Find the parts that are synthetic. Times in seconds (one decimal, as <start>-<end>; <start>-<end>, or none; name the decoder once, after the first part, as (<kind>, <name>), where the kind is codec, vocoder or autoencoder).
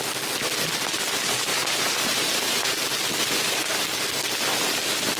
1.5-2.7 (vocoder, BigVGAN v2)